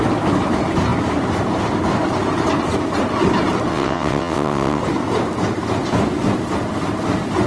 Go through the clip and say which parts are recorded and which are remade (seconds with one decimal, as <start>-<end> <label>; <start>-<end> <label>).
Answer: 0.0-3.7 recorded; 3.7-4.8 remade; 4.8-7.5 recorded